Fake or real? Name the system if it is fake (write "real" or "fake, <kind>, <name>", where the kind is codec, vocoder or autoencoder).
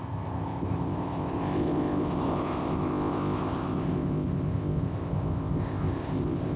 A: fake, codec, ZipCodec